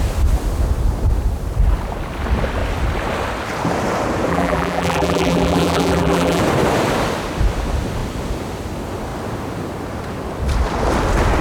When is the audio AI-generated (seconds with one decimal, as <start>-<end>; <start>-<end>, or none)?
4.3-6.4